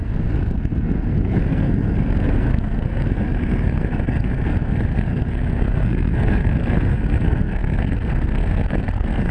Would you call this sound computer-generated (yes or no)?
yes